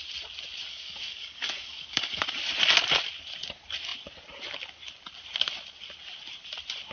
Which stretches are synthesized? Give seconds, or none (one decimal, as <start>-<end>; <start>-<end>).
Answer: 0.7-2.4